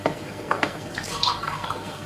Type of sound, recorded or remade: remade